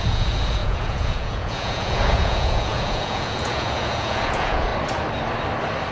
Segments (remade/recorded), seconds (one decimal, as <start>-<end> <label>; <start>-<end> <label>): 0.0-4.7 remade; 4.7-5.9 recorded